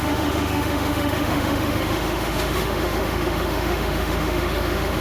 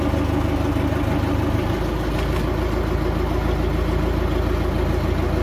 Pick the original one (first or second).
second